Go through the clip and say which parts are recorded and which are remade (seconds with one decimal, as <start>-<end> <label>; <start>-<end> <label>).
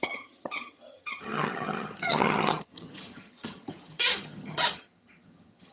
0.0-5.7 remade